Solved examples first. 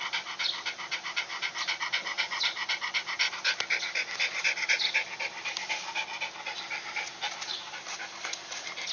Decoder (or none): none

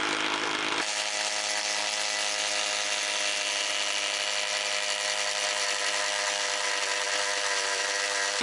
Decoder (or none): none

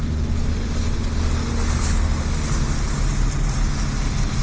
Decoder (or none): none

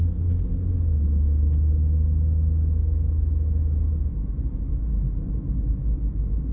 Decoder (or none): none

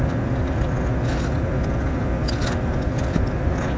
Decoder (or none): none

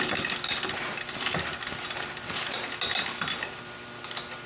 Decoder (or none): none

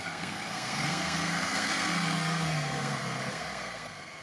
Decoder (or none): codec, SNAC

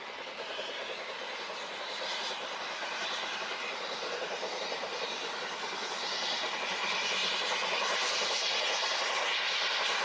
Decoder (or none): none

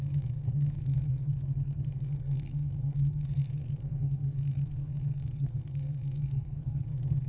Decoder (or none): codec, SNAC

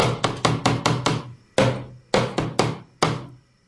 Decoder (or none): none